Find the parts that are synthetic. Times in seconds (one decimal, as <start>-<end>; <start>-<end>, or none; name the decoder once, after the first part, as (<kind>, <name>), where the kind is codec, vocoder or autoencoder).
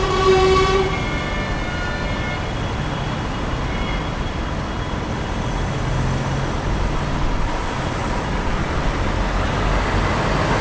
8.0-9.1 (vocoder, BigVGAN v2)